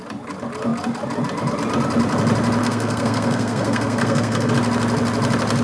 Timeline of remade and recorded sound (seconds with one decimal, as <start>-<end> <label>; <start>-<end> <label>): 0.0-2.6 recorded; 2.6-4.5 remade; 4.5-5.6 recorded